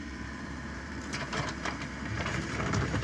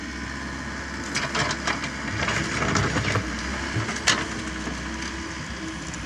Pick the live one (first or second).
second